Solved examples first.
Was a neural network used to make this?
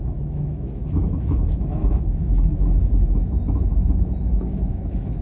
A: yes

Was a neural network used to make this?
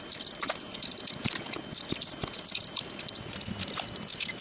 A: no